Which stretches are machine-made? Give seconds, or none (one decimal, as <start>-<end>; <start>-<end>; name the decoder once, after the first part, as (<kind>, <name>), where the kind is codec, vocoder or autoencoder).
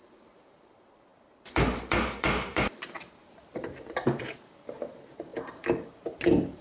0.0-6.6 (vocoder, BigVGAN v2)